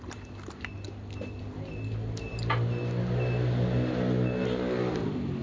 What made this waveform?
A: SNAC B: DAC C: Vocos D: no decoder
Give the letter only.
D